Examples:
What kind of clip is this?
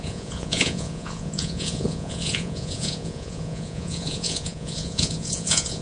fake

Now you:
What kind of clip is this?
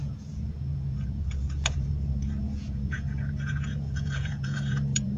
fake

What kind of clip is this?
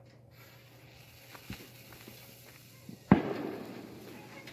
real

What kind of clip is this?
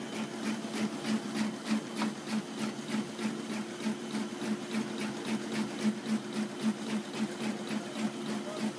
real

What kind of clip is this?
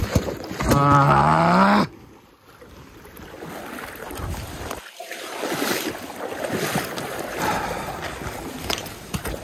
real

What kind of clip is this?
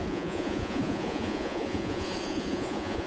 fake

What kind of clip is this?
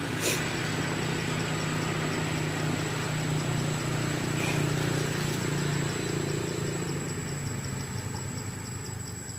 real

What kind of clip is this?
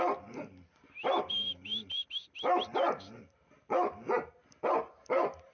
real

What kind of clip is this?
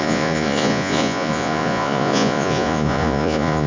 fake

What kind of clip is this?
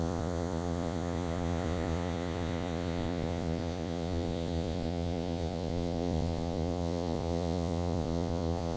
fake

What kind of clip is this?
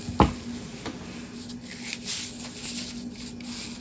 real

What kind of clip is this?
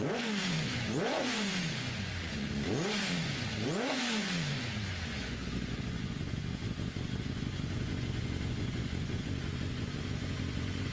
fake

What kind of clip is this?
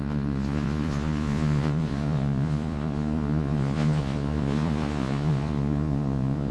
fake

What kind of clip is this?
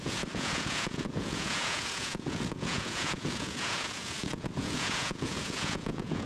fake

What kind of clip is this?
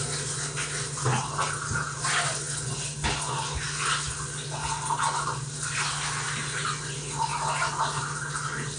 real